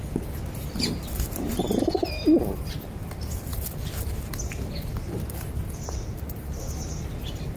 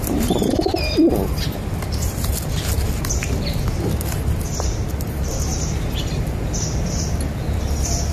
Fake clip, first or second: second